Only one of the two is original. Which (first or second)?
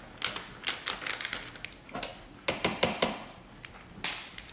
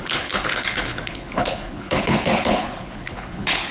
first